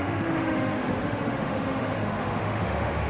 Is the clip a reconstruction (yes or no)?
yes